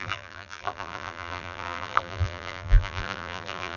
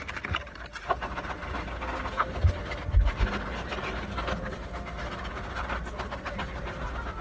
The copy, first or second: first